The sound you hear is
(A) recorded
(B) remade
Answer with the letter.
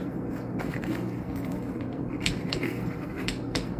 B